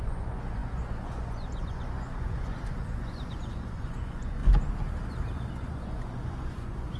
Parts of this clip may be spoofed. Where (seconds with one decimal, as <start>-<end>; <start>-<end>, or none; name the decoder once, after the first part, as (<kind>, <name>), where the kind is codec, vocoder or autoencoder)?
0.0-4.4 (vocoder, Vocos); 5.5-7.0